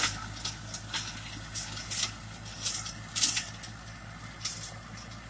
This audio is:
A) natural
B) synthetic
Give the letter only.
A